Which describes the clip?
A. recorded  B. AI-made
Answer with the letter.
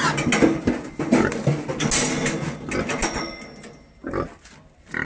A